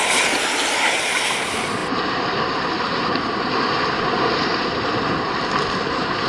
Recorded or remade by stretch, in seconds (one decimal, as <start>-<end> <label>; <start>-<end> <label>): 0.0-6.3 remade